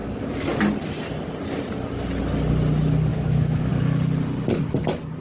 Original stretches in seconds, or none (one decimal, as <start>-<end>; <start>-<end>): 0.0-3.1; 3.7-5.2